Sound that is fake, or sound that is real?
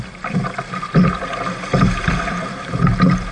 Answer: fake